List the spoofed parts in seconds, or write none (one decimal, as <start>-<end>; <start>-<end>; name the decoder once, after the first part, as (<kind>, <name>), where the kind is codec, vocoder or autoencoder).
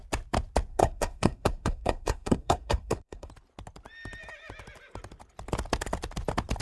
0.7-3.3 (codec, SNAC)